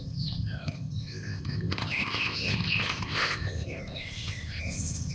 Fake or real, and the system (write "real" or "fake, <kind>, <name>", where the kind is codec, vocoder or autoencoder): fake, codec, ZipCodec